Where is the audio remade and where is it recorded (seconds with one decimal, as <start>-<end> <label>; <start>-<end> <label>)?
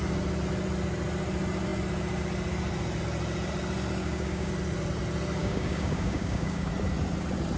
0.0-4.0 recorded; 4.0-4.5 remade; 4.5-5.4 recorded; 5.4-6.7 remade; 6.7-7.6 recorded